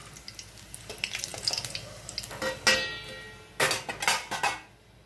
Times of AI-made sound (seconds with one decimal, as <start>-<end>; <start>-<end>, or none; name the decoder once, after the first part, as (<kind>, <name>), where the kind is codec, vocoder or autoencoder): none